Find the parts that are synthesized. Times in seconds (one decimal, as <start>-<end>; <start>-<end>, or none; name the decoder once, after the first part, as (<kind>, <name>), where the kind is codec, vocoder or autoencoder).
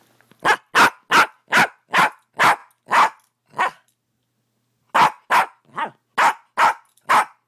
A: none